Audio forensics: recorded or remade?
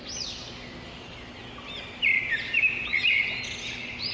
recorded